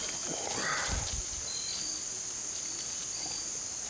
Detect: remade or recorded recorded